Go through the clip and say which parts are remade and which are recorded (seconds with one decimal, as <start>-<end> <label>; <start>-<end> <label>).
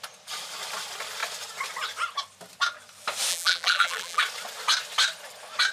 0.0-3.3 recorded; 3.3-4.2 remade; 4.2-5.7 recorded